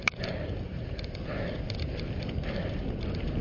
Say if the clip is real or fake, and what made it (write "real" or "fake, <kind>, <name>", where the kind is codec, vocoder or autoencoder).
real